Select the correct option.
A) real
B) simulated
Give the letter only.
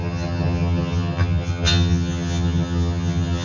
B